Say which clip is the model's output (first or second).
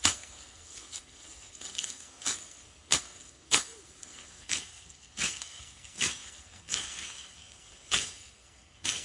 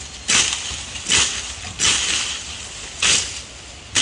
first